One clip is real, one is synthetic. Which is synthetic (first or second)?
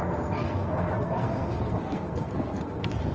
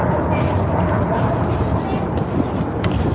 first